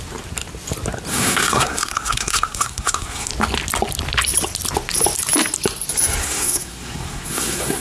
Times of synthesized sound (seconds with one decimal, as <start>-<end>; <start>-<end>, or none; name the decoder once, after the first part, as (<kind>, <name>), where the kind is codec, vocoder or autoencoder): 1.1-3.3 (codec, SNAC); 6.2-7.8